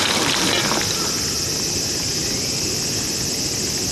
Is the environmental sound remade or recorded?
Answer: recorded